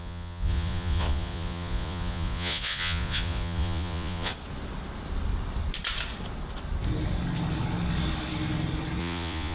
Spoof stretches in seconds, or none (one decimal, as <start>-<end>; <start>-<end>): 0.0-4.3; 9.0-9.5